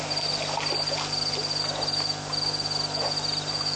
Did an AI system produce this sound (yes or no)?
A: no